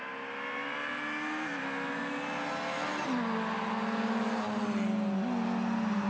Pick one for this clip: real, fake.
real